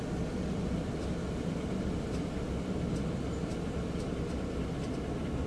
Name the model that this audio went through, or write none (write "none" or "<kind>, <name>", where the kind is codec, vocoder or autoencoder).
none